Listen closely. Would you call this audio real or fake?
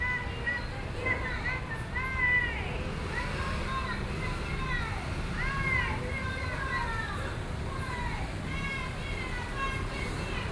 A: real